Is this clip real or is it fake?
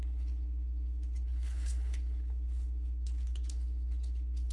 fake